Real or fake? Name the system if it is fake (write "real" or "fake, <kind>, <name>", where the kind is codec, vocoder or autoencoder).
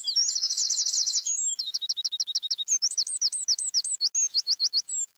fake, autoencoder, DAC-VAE